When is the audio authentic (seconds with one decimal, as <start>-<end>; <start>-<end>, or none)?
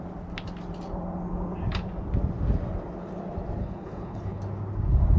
0.0-3.6; 4.4-5.2